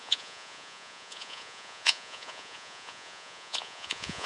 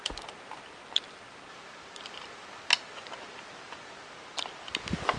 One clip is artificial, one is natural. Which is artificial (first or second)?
first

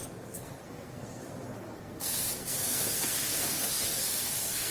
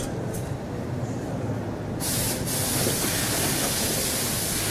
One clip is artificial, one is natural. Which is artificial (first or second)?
first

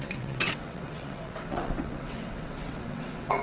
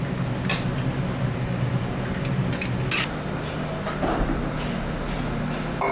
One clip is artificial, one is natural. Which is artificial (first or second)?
first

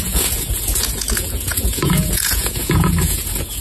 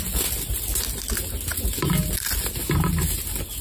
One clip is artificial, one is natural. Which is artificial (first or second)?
first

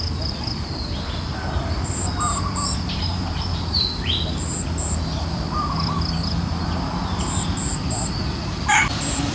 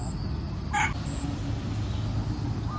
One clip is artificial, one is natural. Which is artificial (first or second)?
first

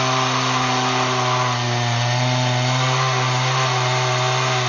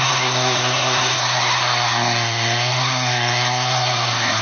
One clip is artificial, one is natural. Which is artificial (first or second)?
second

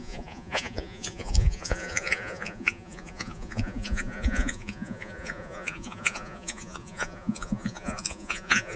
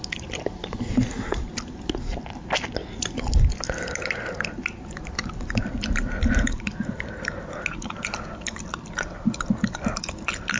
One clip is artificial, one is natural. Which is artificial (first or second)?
first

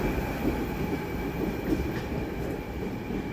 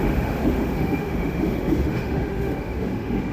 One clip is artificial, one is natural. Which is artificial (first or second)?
second